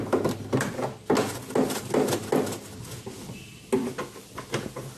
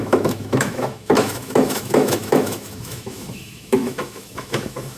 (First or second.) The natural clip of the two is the first